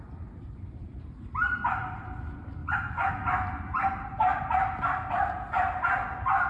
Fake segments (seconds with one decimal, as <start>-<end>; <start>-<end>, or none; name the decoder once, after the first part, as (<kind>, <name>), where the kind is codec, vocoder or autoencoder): 2.6-3.1 (vocoder, Vocos)